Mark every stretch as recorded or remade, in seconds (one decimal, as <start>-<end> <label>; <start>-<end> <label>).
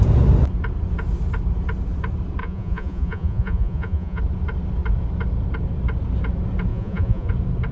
0.0-2.4 recorded; 2.4-4.2 remade; 4.2-6.7 recorded; 6.7-7.3 remade; 7.3-7.7 recorded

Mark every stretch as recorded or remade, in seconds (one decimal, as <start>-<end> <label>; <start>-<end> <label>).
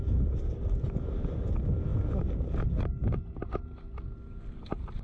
0.0-5.0 recorded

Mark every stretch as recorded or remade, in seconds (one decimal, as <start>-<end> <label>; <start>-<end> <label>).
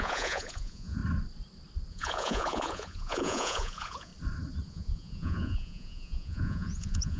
0.0-1.0 remade; 1.0-1.9 recorded; 1.9-4.1 remade; 4.1-4.7 recorded; 4.7-7.2 remade